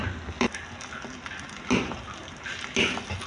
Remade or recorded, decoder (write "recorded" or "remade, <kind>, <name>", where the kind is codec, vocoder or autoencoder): recorded